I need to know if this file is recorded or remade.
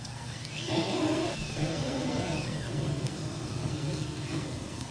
remade